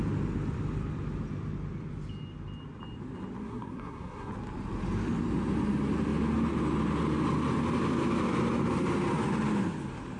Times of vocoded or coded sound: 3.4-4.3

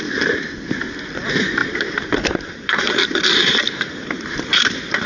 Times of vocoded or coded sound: 1.6-5.1

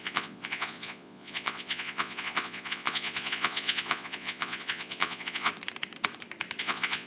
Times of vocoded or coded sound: 0.0-5.5; 6.6-7.1

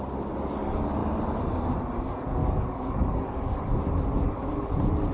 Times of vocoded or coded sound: 2.4-3.7

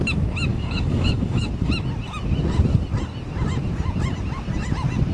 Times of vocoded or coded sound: 0.5-1.5